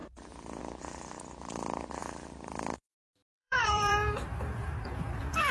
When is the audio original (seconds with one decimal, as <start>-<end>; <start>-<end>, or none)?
0.6-2.0